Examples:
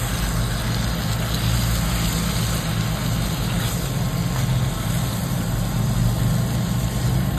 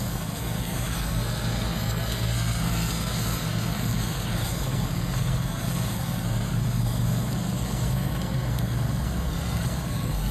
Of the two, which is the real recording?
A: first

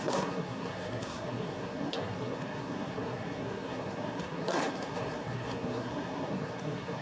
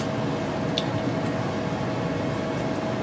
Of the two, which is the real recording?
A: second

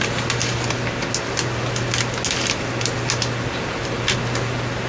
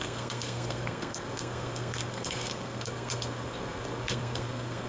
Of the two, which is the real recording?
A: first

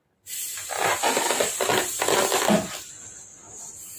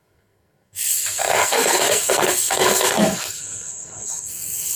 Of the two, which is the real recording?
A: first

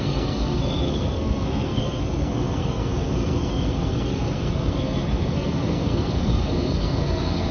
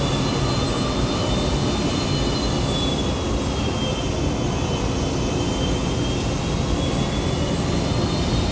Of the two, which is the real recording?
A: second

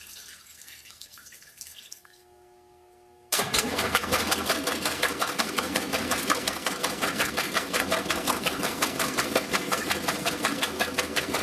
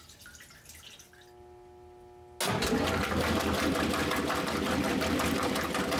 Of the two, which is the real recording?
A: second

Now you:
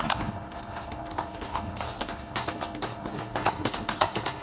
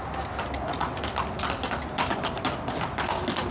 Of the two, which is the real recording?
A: second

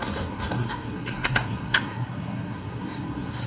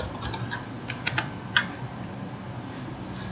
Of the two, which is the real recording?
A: second